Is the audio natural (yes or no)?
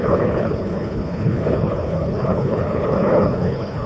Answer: no